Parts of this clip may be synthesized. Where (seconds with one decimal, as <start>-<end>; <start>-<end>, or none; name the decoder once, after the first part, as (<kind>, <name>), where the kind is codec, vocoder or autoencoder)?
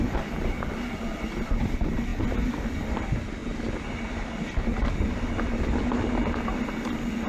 2.1-3.0 (vocoder, BigVGAN v2)